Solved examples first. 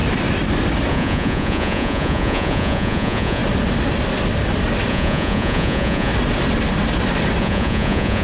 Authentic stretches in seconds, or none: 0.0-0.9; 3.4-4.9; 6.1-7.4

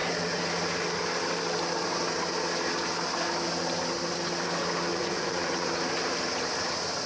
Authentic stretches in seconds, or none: 0.0-4.9; 5.7-7.1

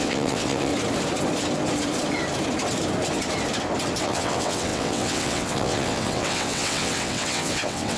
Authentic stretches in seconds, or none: 0.7-4.0

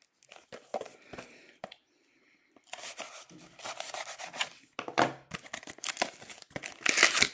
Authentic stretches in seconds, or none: 0.0-0.7; 3.0-7.3